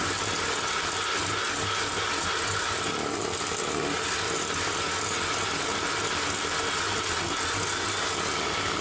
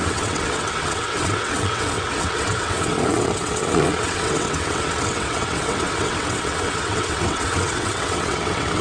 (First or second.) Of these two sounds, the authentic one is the first